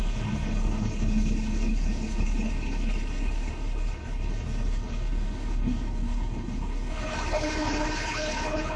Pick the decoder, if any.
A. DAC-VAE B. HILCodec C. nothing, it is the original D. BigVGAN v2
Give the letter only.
B